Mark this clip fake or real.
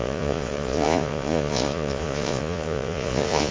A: fake